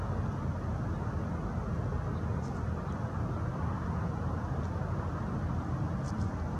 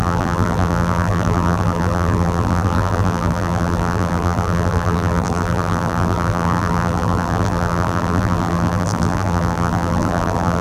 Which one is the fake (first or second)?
second